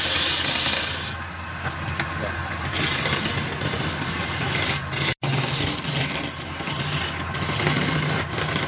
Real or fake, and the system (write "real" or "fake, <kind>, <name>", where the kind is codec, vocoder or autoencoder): real